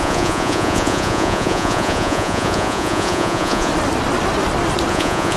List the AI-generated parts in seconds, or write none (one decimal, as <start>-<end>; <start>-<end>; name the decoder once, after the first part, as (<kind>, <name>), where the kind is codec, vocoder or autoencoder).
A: 0.0-3.7 (vocoder, Vocos); 4.9-5.4